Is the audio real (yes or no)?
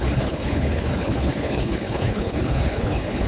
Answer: no